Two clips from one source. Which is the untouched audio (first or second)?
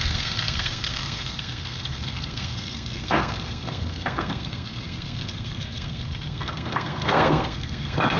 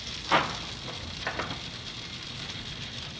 second